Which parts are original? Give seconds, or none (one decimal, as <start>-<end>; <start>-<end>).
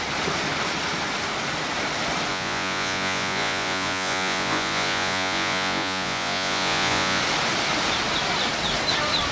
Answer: 0.0-2.3; 7.2-9.3